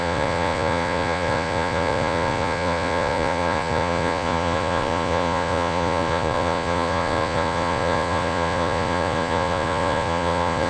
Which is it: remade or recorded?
remade